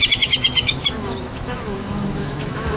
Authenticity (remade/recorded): remade